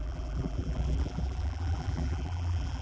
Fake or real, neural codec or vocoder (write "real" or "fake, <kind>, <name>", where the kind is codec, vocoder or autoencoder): fake, vocoder, BigVGAN v2